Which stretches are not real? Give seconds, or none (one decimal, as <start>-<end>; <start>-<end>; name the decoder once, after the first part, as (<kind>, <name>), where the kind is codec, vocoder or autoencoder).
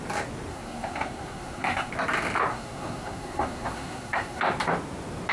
0.5-1.9 (codec, SNAC); 2.5-4.4